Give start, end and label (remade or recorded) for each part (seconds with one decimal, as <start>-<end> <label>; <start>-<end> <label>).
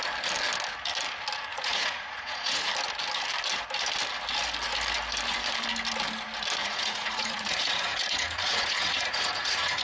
0.0-1.5 recorded; 1.5-2.7 remade; 2.7-6.6 recorded; 6.6-9.8 remade